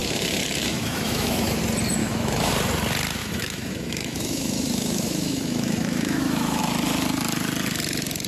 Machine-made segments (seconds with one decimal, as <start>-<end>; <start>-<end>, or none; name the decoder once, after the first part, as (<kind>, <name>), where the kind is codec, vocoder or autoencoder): 0.0-1.6 (autoencoder, DAC-VAE); 2.0-2.5; 3.2-6.6